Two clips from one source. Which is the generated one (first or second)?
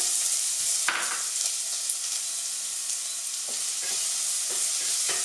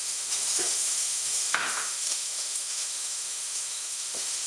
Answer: second